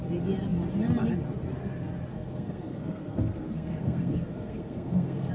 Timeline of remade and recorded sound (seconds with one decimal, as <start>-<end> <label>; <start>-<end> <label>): 0.0-2.1 recorded; 2.1-5.3 remade